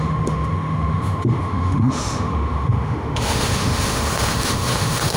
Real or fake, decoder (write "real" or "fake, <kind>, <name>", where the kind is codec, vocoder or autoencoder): fake, autoencoder, DAC-VAE